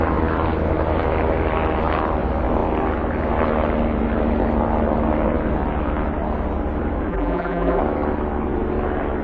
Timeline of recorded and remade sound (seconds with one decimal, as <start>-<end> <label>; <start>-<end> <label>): 0.0-7.1 recorded; 7.1-7.8 remade; 7.8-9.2 recorded